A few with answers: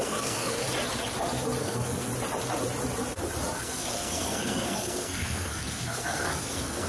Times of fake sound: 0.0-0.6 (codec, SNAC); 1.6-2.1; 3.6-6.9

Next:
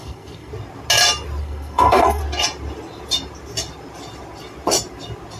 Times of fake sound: 0.0-0.5 (codec, SNAC); 1.4-2.2

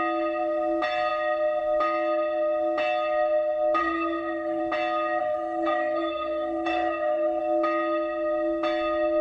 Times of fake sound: 3.8-4.6 (codec, SNAC); 5.2-7.4

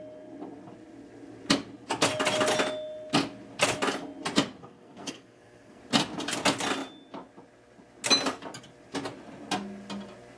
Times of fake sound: 4.6-5.8 (codec, SNAC)

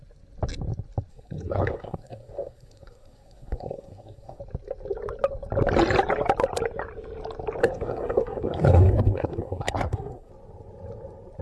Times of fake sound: 1.1-4.4 (codec, SNAC); 7.6-10.3

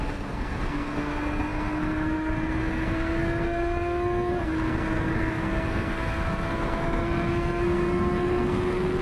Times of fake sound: 0.0-9.0 (codec, SNAC)